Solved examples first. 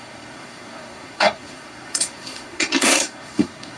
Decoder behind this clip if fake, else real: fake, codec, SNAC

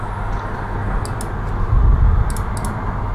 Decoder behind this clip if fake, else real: real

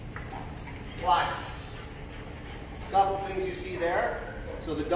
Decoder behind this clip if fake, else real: real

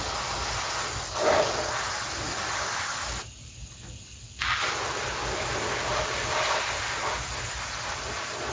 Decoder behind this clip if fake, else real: real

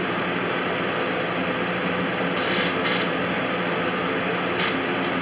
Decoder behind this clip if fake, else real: real